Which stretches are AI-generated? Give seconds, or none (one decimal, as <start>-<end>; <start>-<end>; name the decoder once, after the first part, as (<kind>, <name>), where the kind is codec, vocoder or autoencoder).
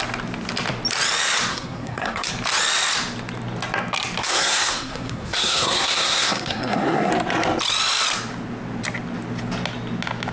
1.5-2.3 (codec, SNAC); 4.2-7.1